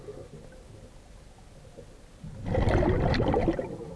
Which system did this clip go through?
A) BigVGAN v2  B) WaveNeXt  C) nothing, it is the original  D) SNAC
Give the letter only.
C